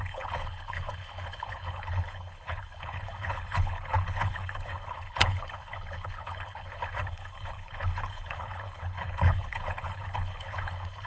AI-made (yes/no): yes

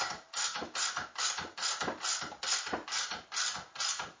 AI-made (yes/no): no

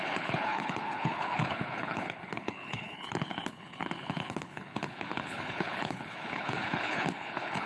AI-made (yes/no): yes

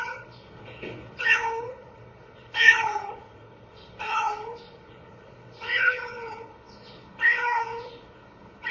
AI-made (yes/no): yes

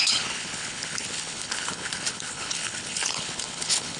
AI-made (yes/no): yes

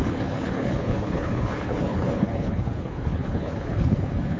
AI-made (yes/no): yes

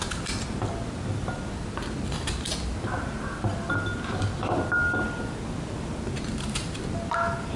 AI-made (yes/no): no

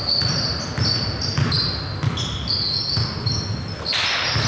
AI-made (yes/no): no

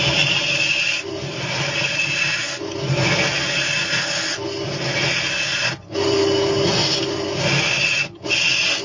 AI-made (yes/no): no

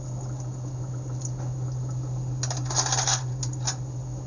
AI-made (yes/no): no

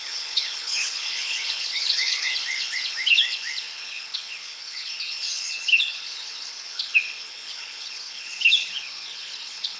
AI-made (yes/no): yes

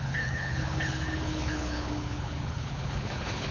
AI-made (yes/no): yes